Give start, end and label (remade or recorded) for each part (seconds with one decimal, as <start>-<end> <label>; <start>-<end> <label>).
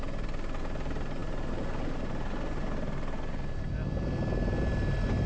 0.0-5.3 recorded